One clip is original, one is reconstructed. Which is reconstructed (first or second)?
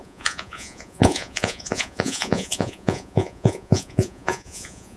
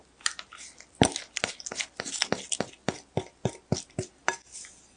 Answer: first